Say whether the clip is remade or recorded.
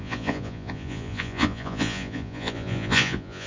remade